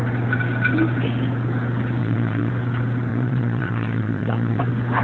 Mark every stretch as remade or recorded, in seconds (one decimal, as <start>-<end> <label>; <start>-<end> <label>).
0.0-2.0 recorded; 2.0-2.5 remade; 2.5-3.1 recorded; 3.1-4.6 remade; 4.6-5.0 recorded